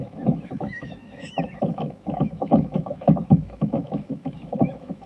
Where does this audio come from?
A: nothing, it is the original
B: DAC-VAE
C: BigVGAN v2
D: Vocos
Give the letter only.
B